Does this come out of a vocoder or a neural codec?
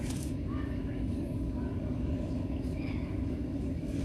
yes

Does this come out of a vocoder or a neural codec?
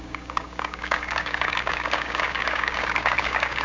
yes